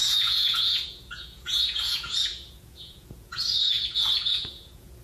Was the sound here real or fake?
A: fake